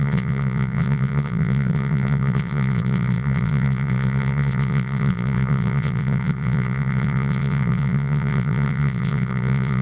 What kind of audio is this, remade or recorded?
remade